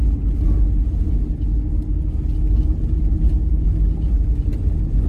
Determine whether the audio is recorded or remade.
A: recorded